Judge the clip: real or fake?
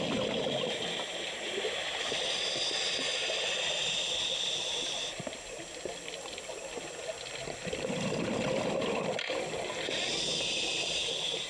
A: real